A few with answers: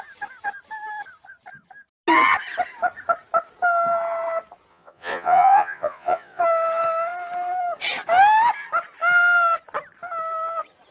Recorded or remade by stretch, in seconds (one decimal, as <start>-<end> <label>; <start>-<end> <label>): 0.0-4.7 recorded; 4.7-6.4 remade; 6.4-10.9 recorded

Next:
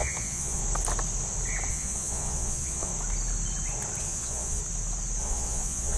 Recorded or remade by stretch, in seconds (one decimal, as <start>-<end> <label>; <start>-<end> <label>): 0.0-0.6 remade; 0.6-1.7 recorded; 1.7-2.9 remade; 2.9-4.0 recorded; 4.0-4.6 remade; 4.6-5.2 recorded; 5.2-6.0 remade

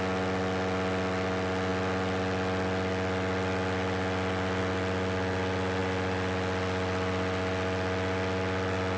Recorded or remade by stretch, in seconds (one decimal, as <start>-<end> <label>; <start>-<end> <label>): 0.0-9.0 recorded